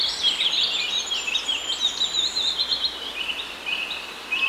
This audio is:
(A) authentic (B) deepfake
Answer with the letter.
B